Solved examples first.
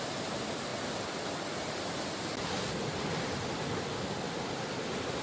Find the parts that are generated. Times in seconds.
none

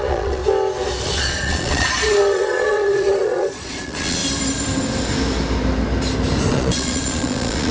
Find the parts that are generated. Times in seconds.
0.0-0.4 (vocoder, Vocos); 1.0-4.2; 6.5-7.7

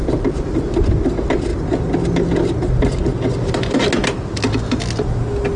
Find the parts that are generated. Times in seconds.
none

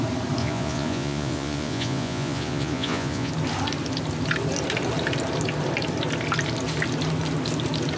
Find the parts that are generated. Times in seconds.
0.4-3.3 (vocoder, Vocos)

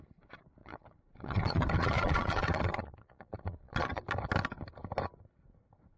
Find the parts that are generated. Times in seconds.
0.6-4.0 (vocoder, Vocos)